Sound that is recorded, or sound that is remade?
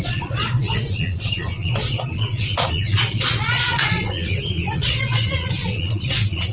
remade